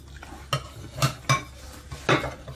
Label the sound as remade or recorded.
recorded